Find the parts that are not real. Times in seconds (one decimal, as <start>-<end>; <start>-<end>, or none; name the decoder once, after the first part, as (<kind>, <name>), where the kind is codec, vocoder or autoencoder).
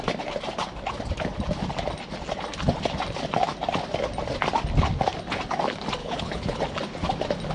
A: 6.0-6.6 (codec, HILCodec)